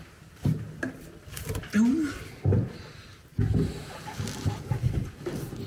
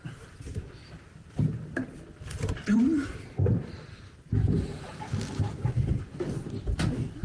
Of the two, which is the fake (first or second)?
second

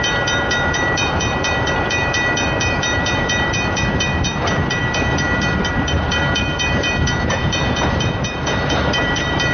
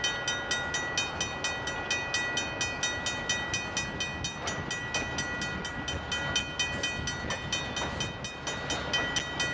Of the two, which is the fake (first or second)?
first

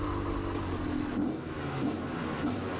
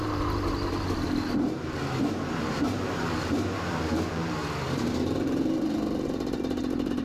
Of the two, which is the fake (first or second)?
second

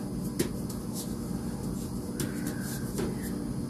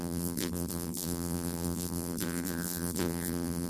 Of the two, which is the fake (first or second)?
second